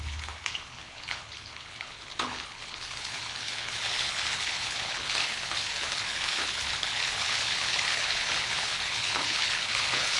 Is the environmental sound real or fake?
fake